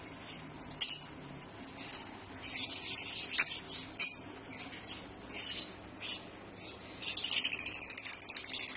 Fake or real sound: real